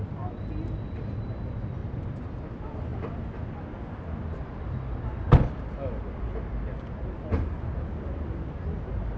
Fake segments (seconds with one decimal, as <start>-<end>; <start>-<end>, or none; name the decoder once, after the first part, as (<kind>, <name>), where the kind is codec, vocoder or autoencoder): 1.8-2.5 (vocoder, BigVGAN v2)